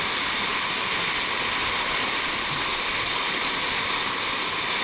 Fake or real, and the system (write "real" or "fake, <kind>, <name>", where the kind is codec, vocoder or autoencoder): real